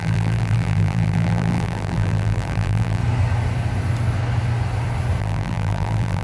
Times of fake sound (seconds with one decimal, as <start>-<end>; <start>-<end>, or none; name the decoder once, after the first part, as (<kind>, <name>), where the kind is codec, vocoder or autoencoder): 0.0-3.0 (vocoder, BigVGAN v2); 5.2-6.2